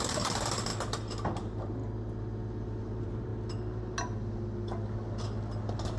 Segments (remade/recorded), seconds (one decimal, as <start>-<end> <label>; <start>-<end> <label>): 0.0-0.7 remade; 0.7-1.4 recorded; 1.4-1.8 remade; 1.8-2.8 recorded; 2.8-3.3 remade; 3.3-5.6 recorded; 5.6-6.0 remade